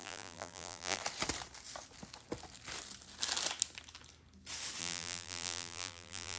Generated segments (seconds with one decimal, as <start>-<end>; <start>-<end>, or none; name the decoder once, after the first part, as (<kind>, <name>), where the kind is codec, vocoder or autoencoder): 0.0-1.0 (vocoder, BigVGAN v2); 4.8-6.4